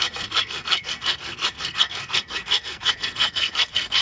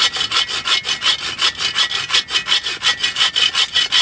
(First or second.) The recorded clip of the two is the second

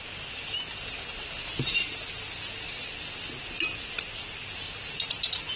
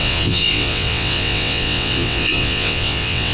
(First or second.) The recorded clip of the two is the first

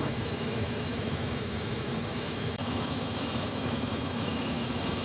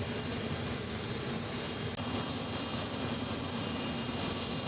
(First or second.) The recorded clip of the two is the second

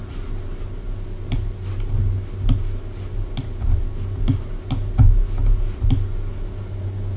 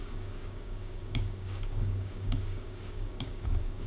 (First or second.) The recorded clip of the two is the first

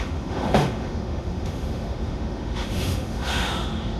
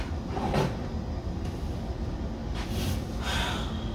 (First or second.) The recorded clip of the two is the second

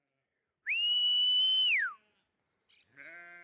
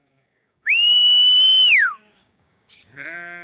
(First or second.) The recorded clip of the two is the first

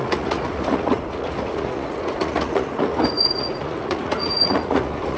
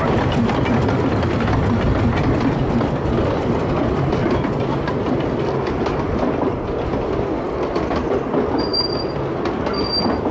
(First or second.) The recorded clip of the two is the second